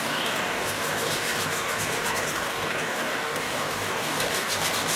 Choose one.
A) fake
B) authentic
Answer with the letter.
A